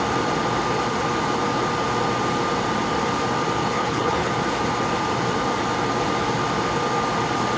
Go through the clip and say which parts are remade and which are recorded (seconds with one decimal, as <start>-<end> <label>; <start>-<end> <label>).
0.0-3.6 recorded; 3.6-4.3 remade; 4.3-7.6 recorded